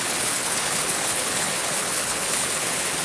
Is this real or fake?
fake